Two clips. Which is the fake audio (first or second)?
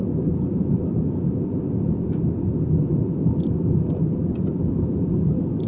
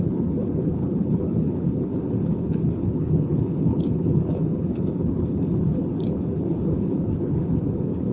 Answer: second